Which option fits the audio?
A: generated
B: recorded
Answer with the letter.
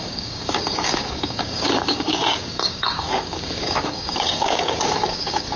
A